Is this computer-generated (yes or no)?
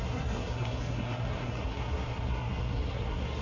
yes